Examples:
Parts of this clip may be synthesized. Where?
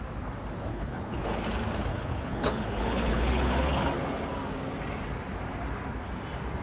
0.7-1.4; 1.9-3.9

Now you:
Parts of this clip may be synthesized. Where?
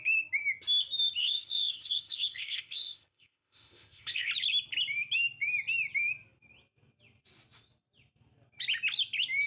1.2-4.3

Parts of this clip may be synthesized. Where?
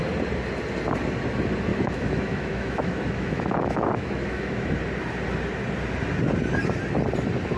1.7-4.7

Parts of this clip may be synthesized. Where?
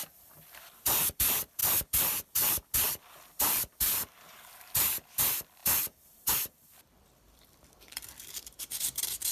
0.0-1.6; 2.2-9.3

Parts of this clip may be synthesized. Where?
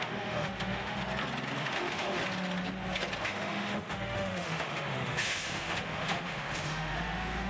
0.0-1.0; 1.6-2.2; 3.2-7.5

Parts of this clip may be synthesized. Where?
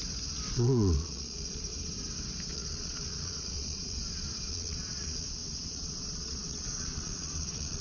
0.5-1.7; 2.5-4.0; 4.5-7.8